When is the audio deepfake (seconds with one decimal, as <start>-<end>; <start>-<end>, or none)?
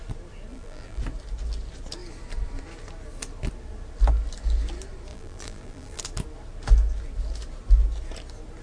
0.5-1.0; 5.1-6.0